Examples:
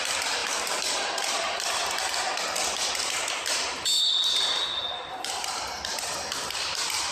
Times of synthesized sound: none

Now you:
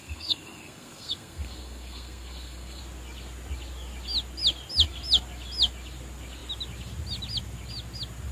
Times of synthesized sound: 0.0-2.8 (codec, SNAC)